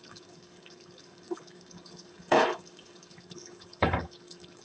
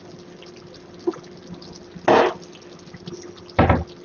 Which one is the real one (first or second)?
second